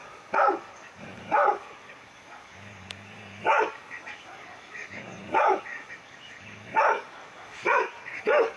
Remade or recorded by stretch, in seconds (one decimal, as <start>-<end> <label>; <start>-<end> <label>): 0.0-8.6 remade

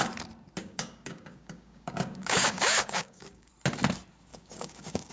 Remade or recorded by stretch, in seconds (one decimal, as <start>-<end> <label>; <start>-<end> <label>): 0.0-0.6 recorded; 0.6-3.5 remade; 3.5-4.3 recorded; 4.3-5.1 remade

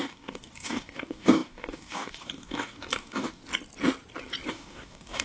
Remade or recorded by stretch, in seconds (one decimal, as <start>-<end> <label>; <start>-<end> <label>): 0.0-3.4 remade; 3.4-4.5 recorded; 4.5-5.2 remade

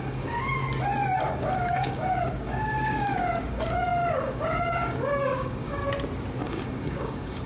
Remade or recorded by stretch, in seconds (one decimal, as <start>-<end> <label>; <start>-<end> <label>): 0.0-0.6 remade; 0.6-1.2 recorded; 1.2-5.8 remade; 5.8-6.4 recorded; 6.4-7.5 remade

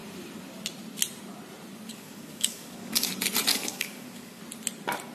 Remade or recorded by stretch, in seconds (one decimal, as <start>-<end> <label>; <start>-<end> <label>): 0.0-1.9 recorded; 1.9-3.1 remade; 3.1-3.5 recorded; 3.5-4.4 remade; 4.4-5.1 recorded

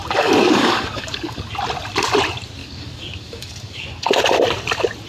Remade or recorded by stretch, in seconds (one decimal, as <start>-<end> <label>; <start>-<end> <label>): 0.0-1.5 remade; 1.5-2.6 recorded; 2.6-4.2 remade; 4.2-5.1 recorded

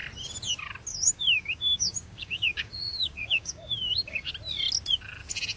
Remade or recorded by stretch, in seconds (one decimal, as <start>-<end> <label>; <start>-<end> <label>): 0.0-0.9 recorded; 0.9-4.3 remade; 4.3-5.6 recorded